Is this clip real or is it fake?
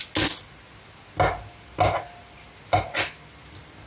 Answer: real